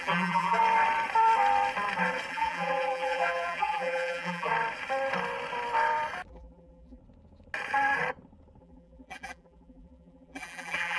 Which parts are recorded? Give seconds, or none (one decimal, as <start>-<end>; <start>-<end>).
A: 0.6-2.3; 4.5-6.3; 7.0-8.6